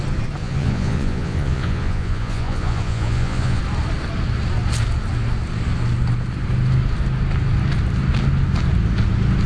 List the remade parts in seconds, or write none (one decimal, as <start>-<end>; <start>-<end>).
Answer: 0.4-3.6